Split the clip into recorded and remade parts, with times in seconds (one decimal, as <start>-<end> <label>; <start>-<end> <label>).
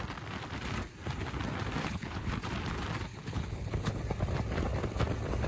0.0-1.8 recorded; 1.8-2.3 remade; 2.3-3.1 recorded; 3.1-4.0 remade; 4.0-5.5 recorded